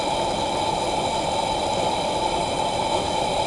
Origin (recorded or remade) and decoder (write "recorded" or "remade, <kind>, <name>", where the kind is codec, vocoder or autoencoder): recorded